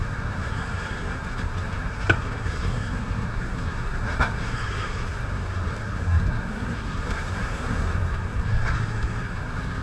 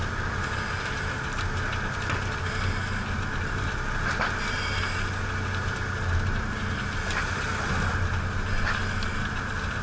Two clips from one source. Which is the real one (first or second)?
second